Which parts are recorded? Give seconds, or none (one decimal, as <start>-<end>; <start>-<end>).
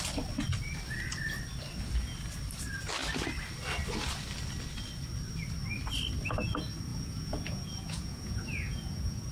0.0-6.9